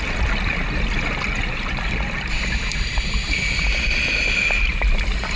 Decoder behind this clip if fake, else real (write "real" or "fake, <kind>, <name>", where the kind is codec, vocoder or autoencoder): real